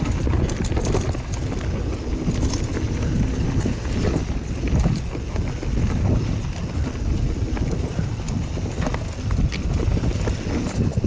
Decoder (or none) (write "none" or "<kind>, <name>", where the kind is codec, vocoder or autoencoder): none